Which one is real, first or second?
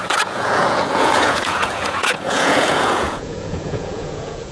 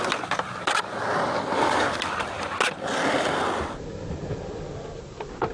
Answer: second